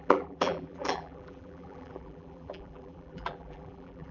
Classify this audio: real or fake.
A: fake